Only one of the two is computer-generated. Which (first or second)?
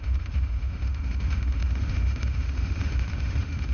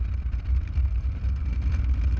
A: first